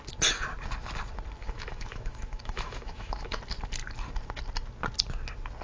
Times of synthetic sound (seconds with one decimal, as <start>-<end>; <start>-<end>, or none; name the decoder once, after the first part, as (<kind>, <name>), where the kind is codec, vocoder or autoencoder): 1.4-3.4 (autoencoder, DAC-VAE)